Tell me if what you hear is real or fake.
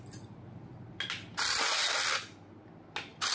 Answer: real